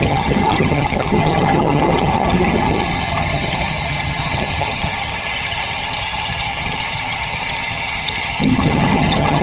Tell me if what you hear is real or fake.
fake